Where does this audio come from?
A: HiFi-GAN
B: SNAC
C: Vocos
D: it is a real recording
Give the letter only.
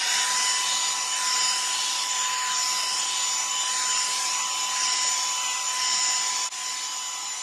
D